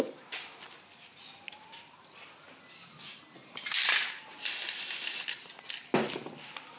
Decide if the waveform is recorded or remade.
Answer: recorded